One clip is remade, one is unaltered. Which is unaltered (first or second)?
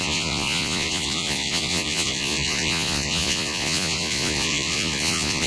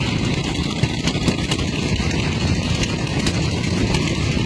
second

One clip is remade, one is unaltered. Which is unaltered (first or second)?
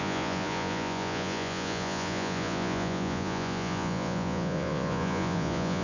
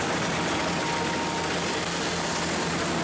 second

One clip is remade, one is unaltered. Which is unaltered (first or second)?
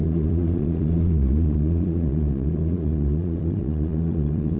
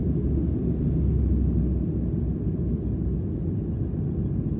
second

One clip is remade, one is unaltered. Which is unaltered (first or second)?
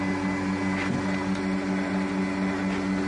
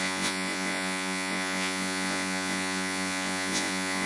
first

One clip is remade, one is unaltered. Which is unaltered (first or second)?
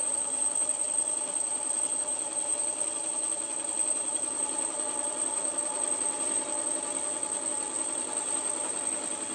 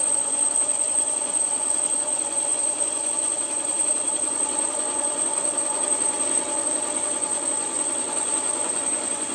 first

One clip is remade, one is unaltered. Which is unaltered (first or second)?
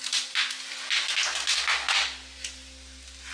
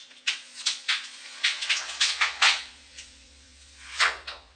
first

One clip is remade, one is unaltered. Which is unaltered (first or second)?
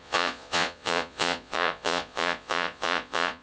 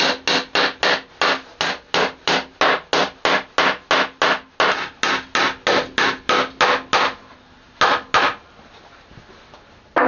second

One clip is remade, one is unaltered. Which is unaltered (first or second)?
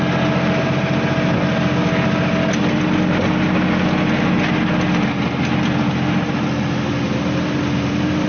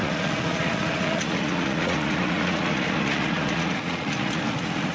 first